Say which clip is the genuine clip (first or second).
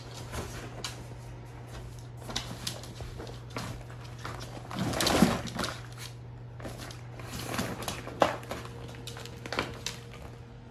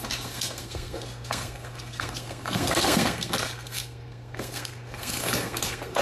first